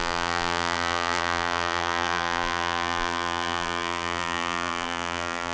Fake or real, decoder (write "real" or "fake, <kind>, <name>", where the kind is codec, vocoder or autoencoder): fake, vocoder, BigVGAN v2